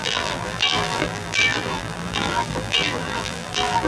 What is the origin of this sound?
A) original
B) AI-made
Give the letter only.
B